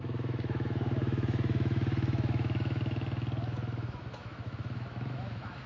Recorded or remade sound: remade